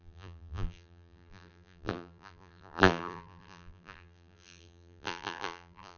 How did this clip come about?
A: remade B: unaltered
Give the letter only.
A